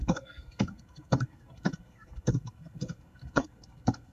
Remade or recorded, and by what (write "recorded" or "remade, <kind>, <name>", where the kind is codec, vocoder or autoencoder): remade, codec, SNAC